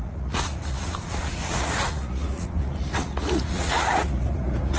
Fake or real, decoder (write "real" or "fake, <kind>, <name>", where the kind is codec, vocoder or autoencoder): fake, vocoder, Vocos